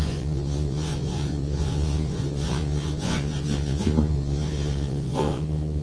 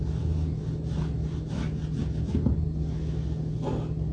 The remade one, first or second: first